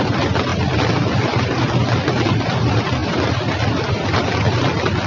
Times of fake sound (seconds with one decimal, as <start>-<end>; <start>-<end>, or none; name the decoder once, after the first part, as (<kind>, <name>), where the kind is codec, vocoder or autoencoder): 0.0-0.5 (vocoder, BigVGAN v2); 2.6-5.1